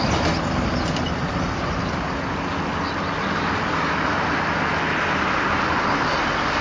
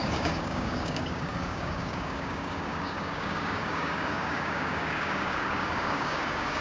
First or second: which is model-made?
second